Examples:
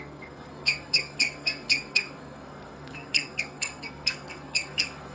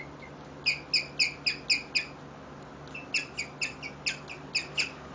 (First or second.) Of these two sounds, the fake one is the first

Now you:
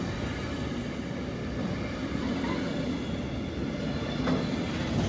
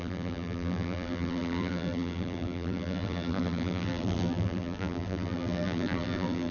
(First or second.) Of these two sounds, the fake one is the second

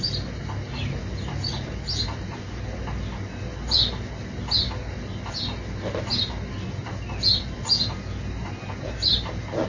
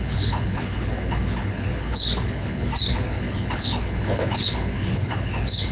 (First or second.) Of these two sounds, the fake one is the second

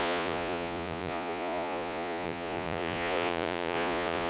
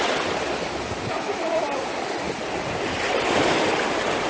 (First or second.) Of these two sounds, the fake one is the first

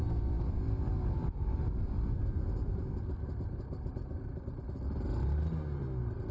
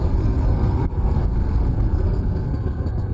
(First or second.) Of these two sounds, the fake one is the second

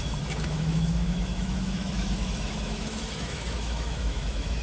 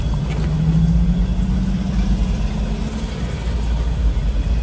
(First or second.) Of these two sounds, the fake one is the first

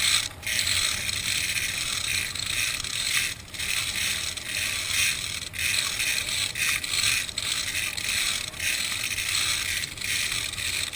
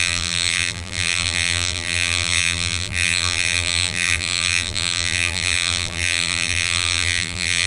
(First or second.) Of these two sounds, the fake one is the second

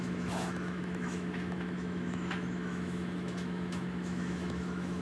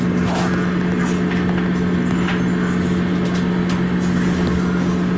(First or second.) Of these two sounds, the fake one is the first